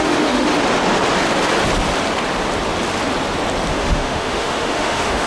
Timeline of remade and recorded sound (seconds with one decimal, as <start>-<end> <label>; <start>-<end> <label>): 0.0-0.5 remade; 0.5-3.7 recorded; 3.7-5.3 remade